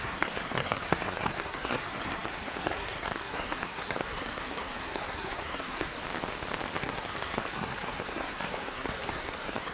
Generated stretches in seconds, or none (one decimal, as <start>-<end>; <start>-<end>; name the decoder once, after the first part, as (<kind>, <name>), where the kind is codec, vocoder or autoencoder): 0.0-6.0 (codec, SNAC); 6.8-9.7